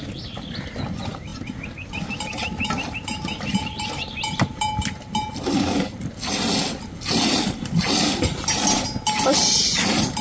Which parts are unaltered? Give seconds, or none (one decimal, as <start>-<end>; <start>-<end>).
0.0-10.2